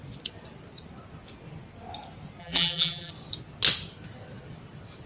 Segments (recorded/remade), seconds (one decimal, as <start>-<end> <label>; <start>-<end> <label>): 0.0-2.4 recorded; 2.4-3.1 remade; 3.1-5.1 recorded